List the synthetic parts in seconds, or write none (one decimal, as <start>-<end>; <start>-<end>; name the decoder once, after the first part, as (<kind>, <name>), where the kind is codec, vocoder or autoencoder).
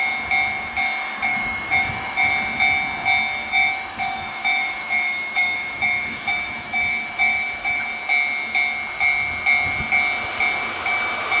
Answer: 1.3-2.3 (autoencoder, DAC-VAE); 3.4-7.9